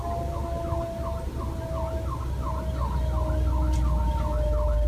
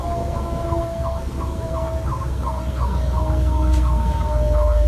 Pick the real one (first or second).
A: first